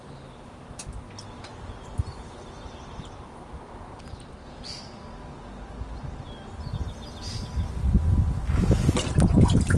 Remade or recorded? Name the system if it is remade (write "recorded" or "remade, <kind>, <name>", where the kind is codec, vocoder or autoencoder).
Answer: recorded